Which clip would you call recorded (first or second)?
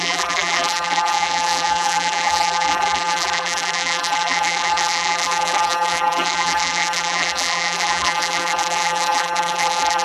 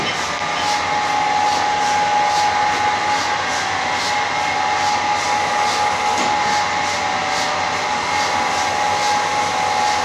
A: second